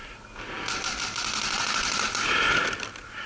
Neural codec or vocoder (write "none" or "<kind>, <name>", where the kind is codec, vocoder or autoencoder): none